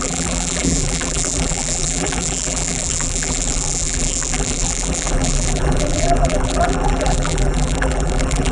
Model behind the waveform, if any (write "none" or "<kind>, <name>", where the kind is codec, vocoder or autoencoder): vocoder, BigVGAN v2